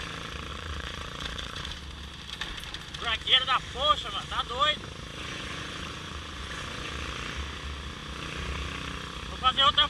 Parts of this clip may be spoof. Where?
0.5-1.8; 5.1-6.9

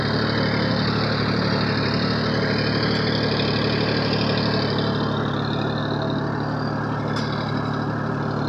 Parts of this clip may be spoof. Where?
none